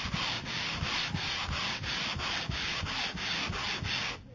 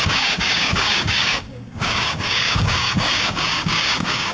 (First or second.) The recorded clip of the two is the first